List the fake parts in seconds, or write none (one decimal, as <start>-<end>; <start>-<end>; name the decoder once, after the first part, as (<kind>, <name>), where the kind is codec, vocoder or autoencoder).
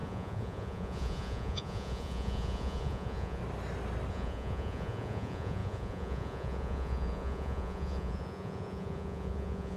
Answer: 0.0-3.4 (vocoder, Vocos); 4.1-9.8